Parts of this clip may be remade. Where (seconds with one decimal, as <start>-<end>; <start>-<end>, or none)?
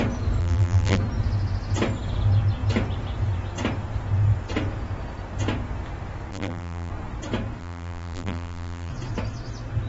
0.4-1.0; 6.3-6.9; 7.6-8.9